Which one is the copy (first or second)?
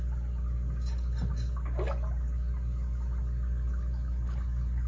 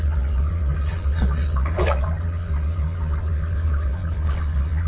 second